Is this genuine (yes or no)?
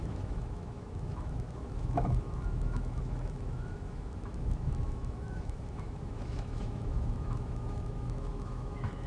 no